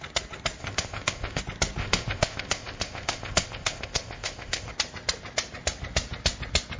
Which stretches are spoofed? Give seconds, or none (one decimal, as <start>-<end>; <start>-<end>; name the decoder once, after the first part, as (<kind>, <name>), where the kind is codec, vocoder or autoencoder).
0.6-1.4 (codec, ZipCodec); 1.8-4.7